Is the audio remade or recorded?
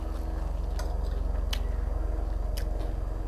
recorded